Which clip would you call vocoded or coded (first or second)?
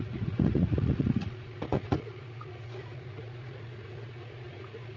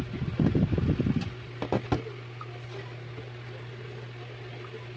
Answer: first